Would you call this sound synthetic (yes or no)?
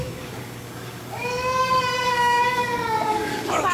yes